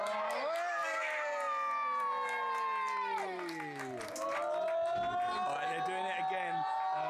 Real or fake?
real